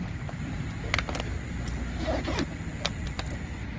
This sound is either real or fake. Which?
real